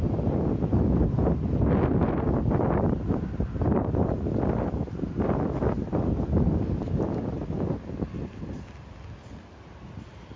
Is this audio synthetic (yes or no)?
no